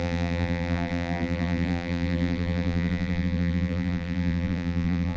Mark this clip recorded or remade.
remade